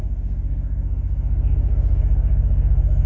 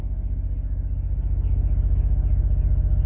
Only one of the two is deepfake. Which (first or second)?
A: first